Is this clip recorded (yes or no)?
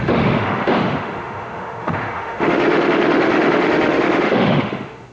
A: no